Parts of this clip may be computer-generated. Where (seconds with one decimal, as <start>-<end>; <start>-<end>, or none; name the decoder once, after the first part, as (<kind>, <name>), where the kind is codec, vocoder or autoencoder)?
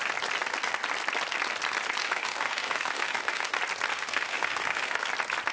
2.0-3.5 (autoencoder, DAC-VAE); 3.9-5.0